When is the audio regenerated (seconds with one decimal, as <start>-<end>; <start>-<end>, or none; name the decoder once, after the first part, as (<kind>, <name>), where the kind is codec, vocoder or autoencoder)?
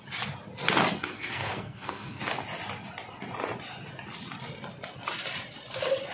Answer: 1.1-2.2 (codec, SNAC)